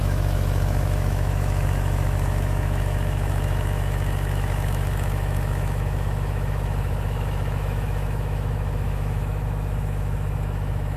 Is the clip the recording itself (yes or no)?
no